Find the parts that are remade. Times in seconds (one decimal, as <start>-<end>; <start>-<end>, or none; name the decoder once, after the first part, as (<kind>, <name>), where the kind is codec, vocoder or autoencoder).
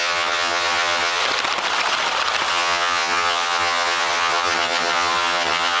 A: 0.0-1.2 (vocoder, HiFi-GAN); 2.5-5.8